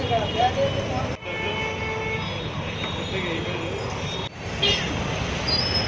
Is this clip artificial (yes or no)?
no